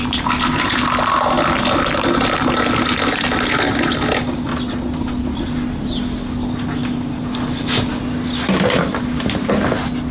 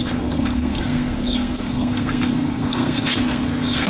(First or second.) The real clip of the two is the first